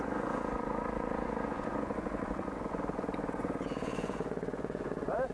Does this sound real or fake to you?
fake